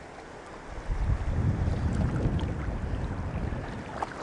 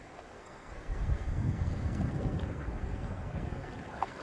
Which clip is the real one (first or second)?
first